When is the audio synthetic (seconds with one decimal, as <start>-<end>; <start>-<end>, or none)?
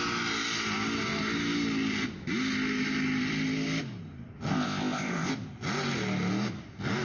4.5-5.3